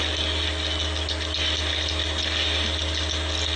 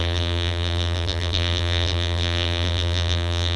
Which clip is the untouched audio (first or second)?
first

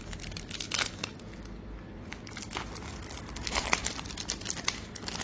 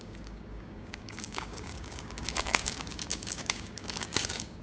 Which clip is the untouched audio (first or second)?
first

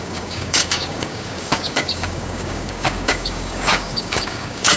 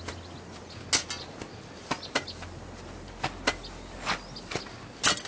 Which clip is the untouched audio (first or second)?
second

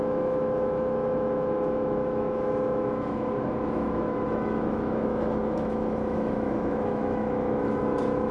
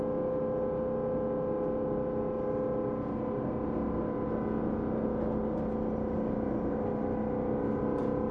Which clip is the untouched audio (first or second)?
second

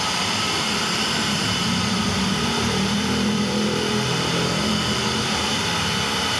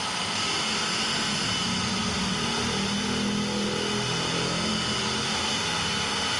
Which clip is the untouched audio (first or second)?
second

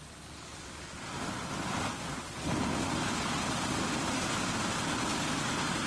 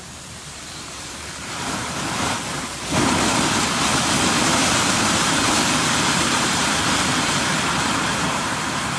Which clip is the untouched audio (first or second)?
first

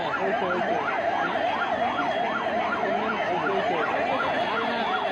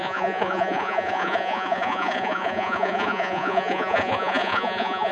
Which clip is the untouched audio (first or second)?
first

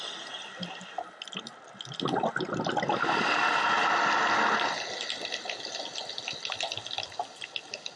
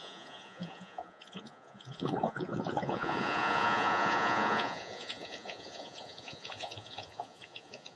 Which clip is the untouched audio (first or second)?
first